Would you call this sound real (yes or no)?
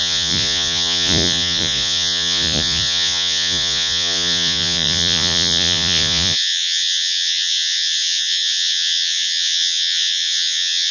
no